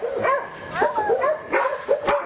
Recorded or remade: recorded